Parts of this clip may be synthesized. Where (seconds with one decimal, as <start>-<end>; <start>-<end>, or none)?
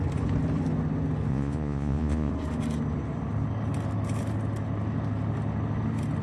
1.3-2.3